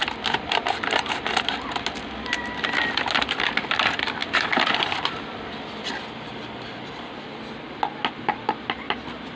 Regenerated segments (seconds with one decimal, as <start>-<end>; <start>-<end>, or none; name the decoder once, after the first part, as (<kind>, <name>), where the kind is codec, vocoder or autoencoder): none